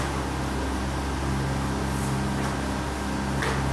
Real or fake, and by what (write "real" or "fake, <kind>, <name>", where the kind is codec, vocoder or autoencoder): real